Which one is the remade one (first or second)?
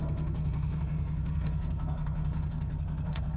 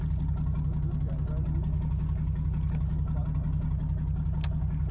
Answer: first